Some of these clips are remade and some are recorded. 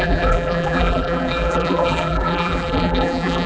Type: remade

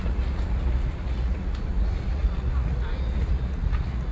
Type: remade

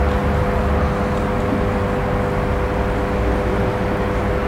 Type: recorded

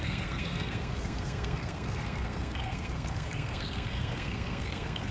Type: remade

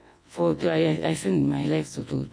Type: remade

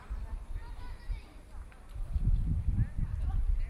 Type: remade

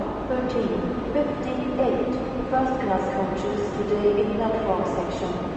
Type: recorded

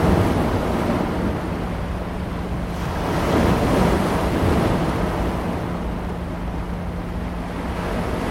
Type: recorded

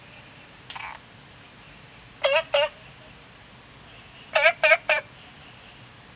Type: recorded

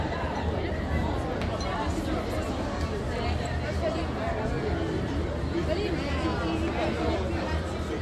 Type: recorded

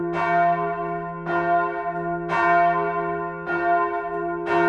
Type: recorded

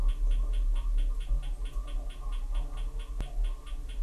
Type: recorded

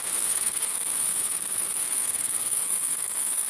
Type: remade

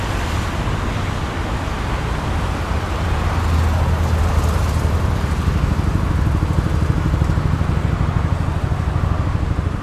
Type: recorded